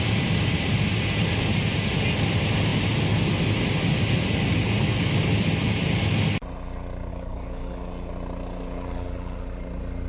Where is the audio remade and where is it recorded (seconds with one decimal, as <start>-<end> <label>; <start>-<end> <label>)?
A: 0.0-7.1 recorded; 7.1-7.9 remade; 7.9-10.1 recorded